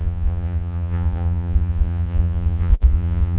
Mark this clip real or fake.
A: fake